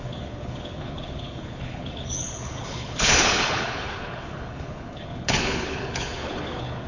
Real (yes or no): no